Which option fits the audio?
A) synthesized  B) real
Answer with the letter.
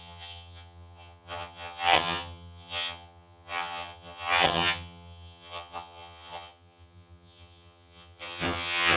A